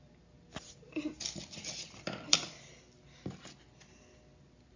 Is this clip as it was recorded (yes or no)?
yes